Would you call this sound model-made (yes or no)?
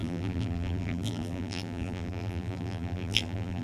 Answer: yes